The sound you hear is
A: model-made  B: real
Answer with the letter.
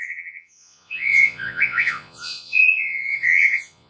A